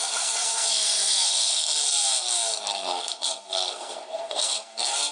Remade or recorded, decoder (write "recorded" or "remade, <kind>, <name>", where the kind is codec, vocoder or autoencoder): remade, codec, SNAC